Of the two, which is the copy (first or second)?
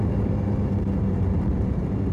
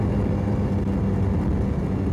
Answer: first